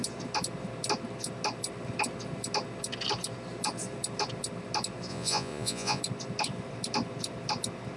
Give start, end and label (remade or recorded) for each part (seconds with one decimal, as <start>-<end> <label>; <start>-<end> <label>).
0.0-5.1 recorded; 5.1-6.0 remade; 6.0-8.0 recorded

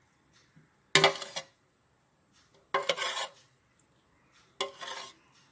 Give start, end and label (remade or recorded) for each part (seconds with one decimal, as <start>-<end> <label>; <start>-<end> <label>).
0.0-2.8 recorded; 2.8-3.6 remade; 3.6-5.5 recorded

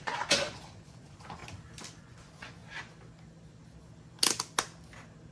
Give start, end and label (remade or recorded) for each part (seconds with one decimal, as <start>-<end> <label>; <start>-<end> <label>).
0.0-1.4 remade; 1.4-2.0 recorded; 2.0-2.6 remade; 2.6-5.3 recorded

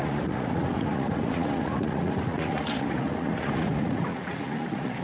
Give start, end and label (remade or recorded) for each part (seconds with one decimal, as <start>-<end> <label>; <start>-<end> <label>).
0.0-5.0 remade

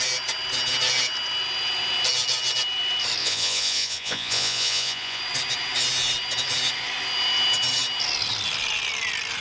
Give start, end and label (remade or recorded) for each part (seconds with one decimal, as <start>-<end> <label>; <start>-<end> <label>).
0.0-3.2 recorded; 3.2-5.2 remade; 5.2-9.4 recorded